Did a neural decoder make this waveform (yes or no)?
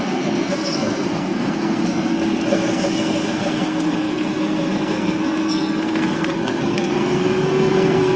yes